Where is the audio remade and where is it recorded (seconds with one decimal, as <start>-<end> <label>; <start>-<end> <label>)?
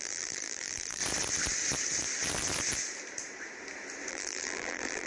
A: 0.0-1.0 remade; 1.0-4.1 recorded; 4.1-5.1 remade